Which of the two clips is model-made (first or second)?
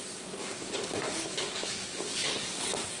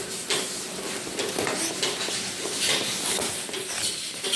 first